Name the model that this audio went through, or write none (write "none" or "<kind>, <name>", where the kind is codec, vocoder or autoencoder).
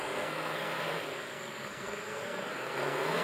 codec, SNAC